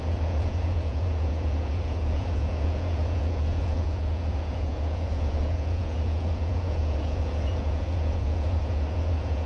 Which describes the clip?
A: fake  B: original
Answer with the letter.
A